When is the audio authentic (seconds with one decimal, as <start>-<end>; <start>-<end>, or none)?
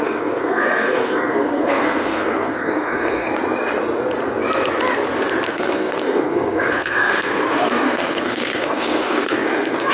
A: 3.3-5.5